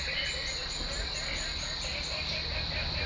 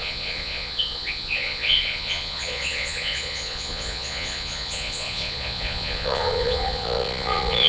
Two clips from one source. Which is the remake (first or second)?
second